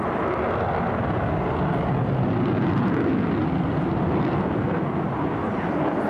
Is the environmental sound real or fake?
real